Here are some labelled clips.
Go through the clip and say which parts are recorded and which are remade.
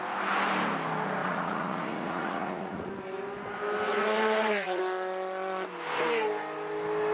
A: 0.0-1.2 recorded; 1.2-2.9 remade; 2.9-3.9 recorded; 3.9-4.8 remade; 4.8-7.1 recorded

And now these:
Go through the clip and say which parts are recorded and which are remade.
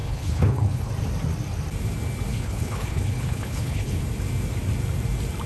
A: 0.0-0.9 remade; 0.9-2.3 recorded; 2.3-4.0 remade; 4.0-5.5 recorded